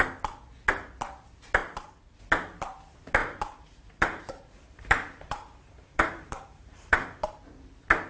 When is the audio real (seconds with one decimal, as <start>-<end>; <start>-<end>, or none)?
0.0-3.2; 7.5-8.1